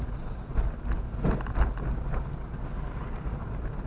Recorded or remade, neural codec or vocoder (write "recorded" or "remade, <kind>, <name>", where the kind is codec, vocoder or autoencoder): recorded